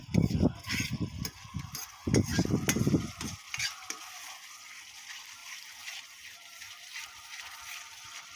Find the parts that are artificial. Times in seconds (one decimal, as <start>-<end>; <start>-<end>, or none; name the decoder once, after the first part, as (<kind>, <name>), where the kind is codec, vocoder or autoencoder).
5.4-6.8 (vocoder, BigVGAN v2)